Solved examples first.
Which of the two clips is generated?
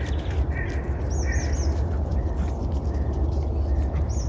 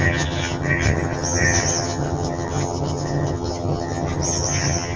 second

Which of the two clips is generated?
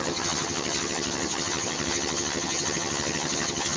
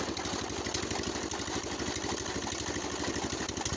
first